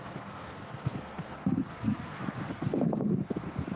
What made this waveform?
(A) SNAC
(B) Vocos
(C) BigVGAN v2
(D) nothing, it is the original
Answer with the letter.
A